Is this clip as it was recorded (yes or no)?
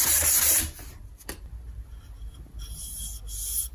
yes